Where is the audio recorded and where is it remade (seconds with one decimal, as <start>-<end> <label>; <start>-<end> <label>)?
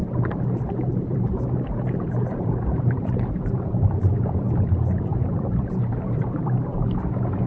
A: 0.0-3.9 remade; 3.9-5.1 recorded; 5.1-7.5 remade